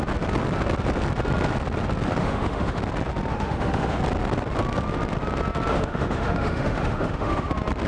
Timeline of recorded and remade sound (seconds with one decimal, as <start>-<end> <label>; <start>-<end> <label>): 0.0-2.2 recorded; 2.2-2.8 remade; 2.8-3.3 recorded; 3.3-4.0 remade; 4.0-5.7 recorded; 5.7-7.5 remade; 7.5-7.9 recorded